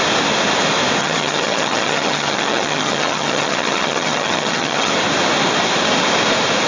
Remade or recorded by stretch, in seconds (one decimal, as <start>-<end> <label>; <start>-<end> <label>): 0.0-1.0 recorded; 1.0-4.9 remade; 4.9-6.7 recorded

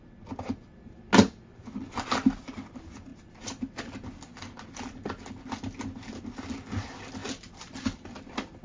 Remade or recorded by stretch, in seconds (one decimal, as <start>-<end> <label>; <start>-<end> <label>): 0.0-8.6 recorded

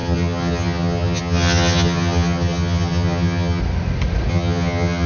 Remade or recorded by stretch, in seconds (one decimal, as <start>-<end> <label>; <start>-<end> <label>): 0.0-3.6 remade; 3.6-4.3 recorded; 4.3-5.1 remade